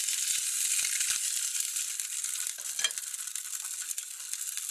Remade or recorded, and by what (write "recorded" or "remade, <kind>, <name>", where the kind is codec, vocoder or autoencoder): recorded